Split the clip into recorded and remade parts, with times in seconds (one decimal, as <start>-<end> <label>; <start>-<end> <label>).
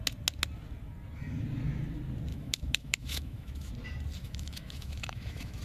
0.0-2.3 recorded; 2.3-3.7 remade; 3.7-4.2 recorded; 4.2-5.6 remade